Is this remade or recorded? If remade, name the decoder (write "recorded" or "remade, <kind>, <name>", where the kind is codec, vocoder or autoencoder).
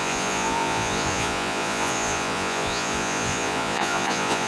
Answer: remade, vocoder, Vocos